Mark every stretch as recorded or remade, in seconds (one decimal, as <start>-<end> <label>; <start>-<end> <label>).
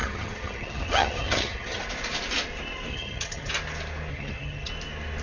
0.0-1.8 remade; 1.8-2.9 recorded; 2.9-3.5 remade; 3.5-4.1 recorded; 4.1-4.7 remade; 4.7-5.2 recorded